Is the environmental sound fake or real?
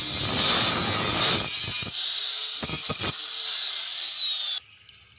real